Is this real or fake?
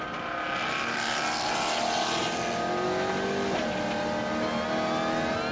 real